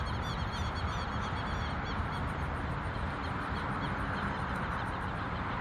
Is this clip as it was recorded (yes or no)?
yes